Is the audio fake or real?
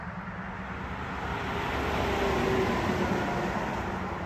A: real